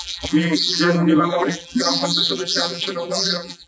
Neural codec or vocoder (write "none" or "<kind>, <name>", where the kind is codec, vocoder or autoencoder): vocoder, BigVGAN v2